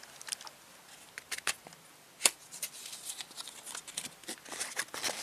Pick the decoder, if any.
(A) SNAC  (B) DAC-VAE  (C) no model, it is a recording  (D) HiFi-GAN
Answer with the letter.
C